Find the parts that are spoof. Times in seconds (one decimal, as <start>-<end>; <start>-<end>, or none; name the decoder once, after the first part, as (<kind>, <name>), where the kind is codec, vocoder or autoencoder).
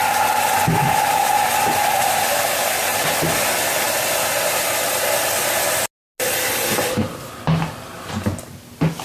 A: none